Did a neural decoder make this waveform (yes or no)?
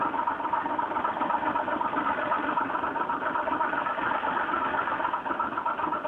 no